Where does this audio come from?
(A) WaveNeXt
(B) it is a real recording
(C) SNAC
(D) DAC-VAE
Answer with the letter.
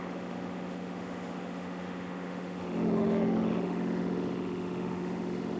D